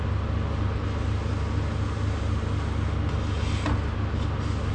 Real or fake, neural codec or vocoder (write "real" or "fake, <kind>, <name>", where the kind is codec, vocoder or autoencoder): real